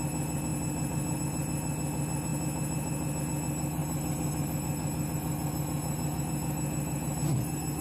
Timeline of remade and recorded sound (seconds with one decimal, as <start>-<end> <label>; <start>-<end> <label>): 0.0-7.8 recorded